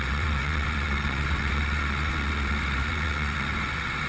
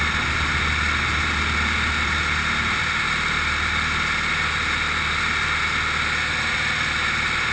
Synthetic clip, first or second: first